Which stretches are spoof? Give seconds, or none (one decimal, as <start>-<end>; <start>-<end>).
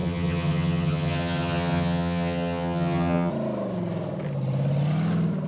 0.0-3.3